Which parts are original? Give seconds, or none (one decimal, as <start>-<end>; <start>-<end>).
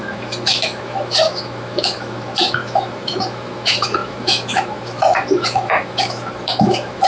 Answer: none